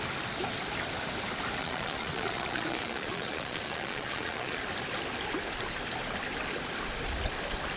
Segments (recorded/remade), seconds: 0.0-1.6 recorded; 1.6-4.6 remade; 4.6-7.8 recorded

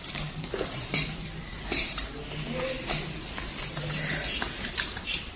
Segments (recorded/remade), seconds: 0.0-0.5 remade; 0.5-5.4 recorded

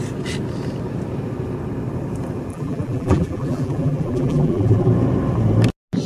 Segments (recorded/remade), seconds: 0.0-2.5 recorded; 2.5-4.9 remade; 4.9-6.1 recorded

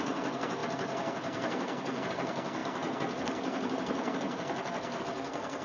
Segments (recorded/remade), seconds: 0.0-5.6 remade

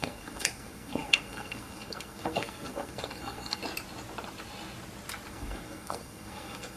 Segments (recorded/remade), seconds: 0.0-3.6 remade; 3.6-5.3 recorded; 5.3-6.8 remade

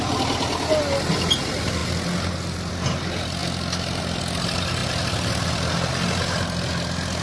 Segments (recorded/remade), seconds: 0.0-7.2 recorded

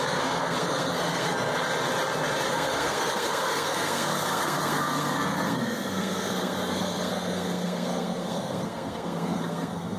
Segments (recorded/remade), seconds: 0.0-1.5 remade; 1.5-2.5 recorded; 2.5-10.0 remade

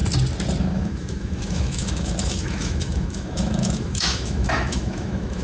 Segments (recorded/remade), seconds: 0.0-0.6 recorded; 0.6-5.4 remade